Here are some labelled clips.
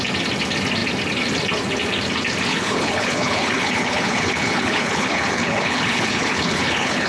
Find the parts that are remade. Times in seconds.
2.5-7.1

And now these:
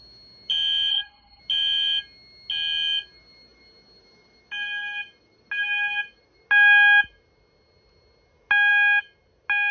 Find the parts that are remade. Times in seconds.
0.9-1.4

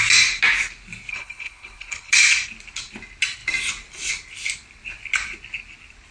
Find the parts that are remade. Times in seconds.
1.1-2.1

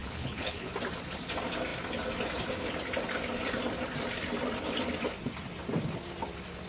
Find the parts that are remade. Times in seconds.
0.0-0.7